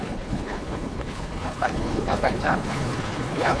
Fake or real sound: fake